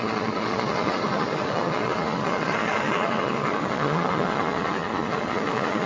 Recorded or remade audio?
remade